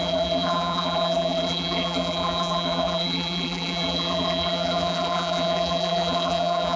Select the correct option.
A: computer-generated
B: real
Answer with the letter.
A